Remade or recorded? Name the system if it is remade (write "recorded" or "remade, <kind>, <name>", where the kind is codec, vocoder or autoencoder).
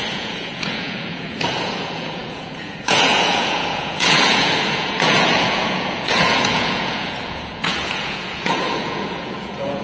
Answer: remade, vocoder, Vocos